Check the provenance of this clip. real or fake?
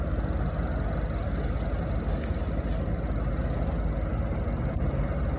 real